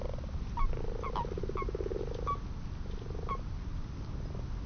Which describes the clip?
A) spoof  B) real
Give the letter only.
B